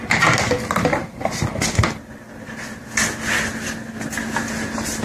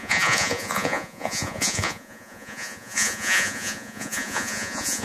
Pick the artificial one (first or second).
second